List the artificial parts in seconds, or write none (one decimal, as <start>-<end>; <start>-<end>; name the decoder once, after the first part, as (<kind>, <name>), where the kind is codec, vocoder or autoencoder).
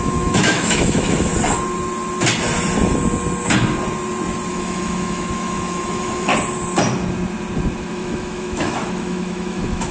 0.0-1.3 (autoencoder, DAC-VAE); 4.5-6.3; 7.9-9.9